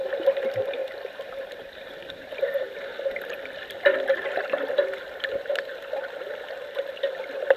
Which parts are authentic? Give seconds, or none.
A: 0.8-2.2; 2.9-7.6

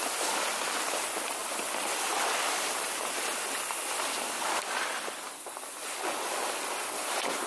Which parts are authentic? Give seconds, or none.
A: 0.0-1.4; 5.9-7.5

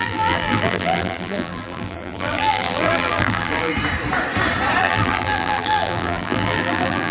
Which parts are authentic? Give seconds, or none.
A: 3.7-4.8

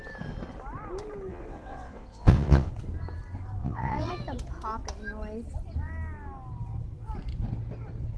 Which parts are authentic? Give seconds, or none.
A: 0.0-1.3; 2.7-3.6; 4.1-8.2

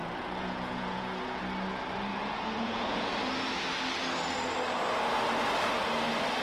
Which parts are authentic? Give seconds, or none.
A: 1.4-2.1; 3.2-6.4

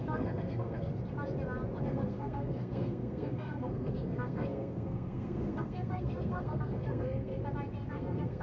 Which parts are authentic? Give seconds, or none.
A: 0.9-1.8; 7.4-7.9